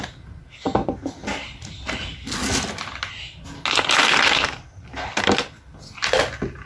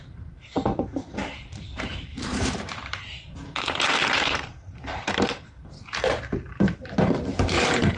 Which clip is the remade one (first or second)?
second